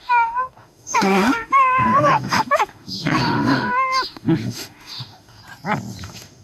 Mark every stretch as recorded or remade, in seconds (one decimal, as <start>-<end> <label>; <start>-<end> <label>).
0.0-5.4 remade; 5.4-6.0 recorded; 6.0-6.4 remade